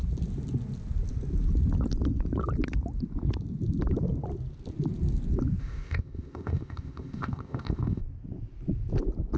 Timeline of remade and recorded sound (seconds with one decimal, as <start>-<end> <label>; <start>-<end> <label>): 0.0-5.6 recorded; 5.6-8.0 remade; 8.0-9.4 recorded